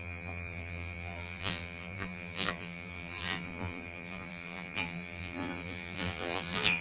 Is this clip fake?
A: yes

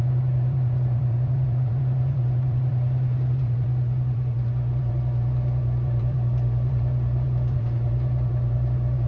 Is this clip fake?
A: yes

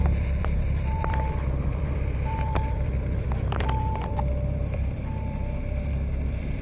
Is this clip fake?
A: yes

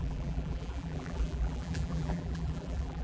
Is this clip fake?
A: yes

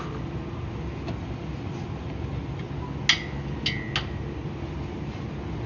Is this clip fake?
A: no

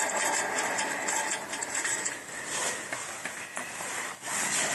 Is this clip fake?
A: no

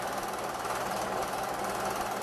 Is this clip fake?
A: no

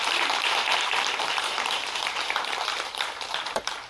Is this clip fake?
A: yes